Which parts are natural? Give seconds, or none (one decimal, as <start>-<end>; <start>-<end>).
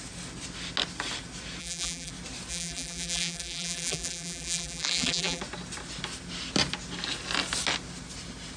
0.0-1.6; 2.1-2.5; 5.4-8.6